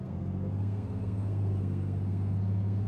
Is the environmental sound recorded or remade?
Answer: remade